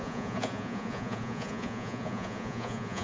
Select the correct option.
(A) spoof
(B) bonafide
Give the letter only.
A